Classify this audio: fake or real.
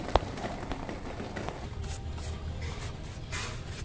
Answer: real